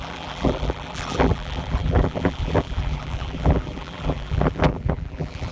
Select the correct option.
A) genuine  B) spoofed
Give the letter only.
B